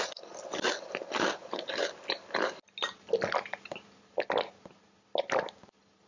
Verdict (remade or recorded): recorded